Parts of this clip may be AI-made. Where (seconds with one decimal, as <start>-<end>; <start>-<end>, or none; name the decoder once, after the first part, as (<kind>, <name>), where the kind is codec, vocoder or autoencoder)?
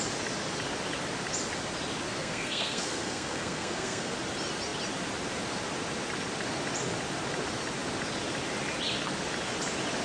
2.2-4.1 (codec, SNAC)